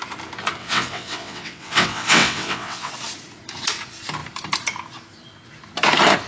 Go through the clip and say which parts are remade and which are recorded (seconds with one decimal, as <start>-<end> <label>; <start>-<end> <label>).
0.0-0.6 recorded; 0.6-2.9 remade; 2.9-6.3 recorded